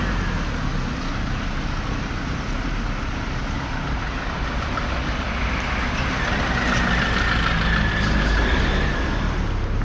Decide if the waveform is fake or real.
real